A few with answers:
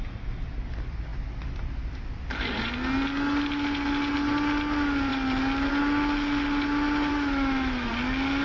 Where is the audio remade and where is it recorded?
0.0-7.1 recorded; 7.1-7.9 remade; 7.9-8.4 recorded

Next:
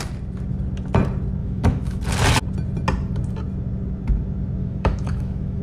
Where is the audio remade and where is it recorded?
0.0-1.4 recorded; 1.4-2.0 remade; 2.0-4.6 recorded; 4.6-5.6 remade

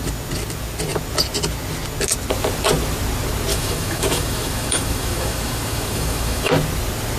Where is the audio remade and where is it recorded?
0.0-3.5 recorded; 3.5-6.5 remade; 6.5-7.2 recorded

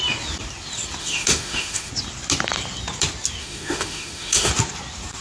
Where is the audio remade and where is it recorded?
0.0-1.0 recorded; 1.0-1.9 remade; 1.9-3.4 recorded; 3.4-4.5 remade; 4.5-5.2 recorded

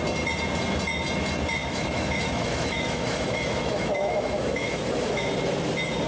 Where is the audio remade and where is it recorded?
0.0-1.6 recorded; 1.6-5.3 remade; 5.3-6.1 recorded

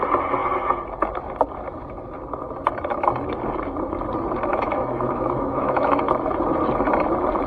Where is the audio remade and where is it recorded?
0.0-4.5 recorded; 4.5-6.0 remade; 6.0-7.5 recorded